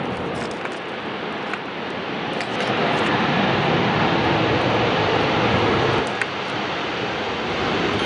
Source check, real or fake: real